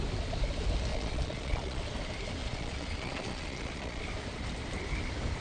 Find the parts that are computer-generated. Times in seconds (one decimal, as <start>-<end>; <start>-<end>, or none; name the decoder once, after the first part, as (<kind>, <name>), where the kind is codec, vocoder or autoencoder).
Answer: 0.9-1.8 (vocoder, Vocos); 2.4-4.0